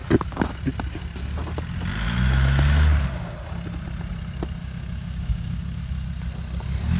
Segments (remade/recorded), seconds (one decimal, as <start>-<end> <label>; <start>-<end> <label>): 0.0-4.6 recorded; 4.6-5.8 remade; 5.8-7.0 recorded